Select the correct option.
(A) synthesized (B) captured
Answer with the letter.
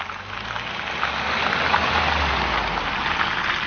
B